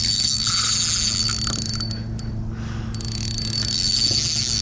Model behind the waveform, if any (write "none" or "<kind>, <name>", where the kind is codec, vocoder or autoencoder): none